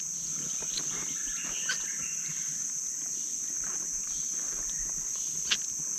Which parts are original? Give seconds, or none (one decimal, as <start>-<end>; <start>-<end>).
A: 0.0-6.0